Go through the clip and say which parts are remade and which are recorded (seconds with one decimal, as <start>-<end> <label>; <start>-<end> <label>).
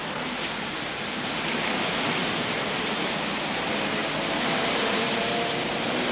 0.0-6.1 remade